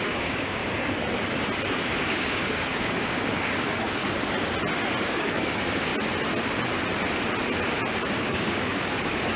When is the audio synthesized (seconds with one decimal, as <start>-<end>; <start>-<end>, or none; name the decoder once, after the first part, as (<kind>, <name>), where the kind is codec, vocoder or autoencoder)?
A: 0.0-0.6 (codec, DAC); 2.0-4.0; 5.0-5.9; 8.2-9.4